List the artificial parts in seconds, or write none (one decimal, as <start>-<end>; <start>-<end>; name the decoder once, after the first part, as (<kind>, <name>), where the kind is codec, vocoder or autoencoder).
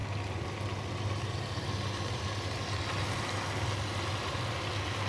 none